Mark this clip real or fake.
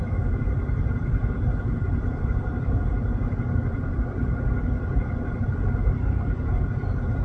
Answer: fake